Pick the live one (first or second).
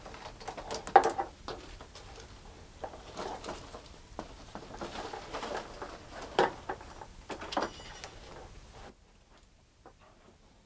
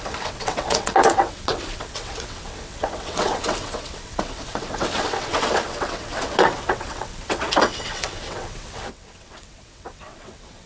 first